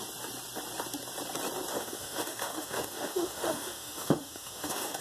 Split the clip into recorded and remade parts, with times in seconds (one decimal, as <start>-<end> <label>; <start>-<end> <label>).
0.0-1.7 recorded; 1.7-5.0 remade